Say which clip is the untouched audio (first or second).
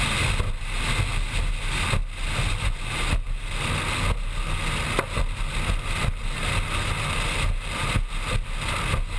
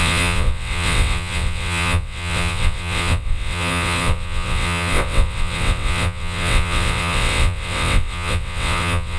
first